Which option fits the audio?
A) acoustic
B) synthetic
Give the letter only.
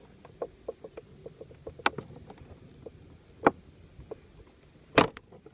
A